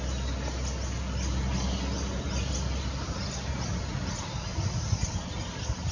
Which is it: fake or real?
real